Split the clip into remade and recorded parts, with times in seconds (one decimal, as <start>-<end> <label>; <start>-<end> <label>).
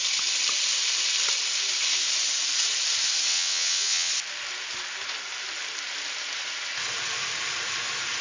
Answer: 0.0-3.3 recorded; 3.3-4.1 remade; 4.1-8.2 recorded